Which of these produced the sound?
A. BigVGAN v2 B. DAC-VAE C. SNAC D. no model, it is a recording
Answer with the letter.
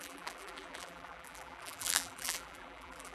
A